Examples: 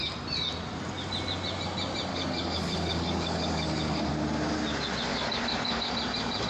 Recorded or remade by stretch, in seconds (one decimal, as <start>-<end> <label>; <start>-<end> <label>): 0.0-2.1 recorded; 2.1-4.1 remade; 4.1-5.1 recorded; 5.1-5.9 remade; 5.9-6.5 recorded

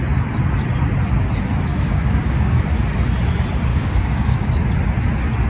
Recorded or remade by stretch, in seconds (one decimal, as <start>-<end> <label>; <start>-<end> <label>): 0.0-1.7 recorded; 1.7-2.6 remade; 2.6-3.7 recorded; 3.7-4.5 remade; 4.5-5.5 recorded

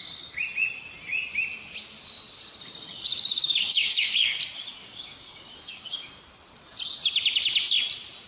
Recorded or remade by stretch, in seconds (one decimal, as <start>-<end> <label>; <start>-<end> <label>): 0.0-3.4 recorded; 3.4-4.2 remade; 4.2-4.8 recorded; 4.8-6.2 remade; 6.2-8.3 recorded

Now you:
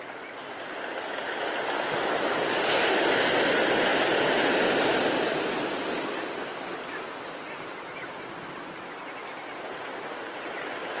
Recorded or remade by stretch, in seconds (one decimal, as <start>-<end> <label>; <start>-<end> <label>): 0.0-11.0 recorded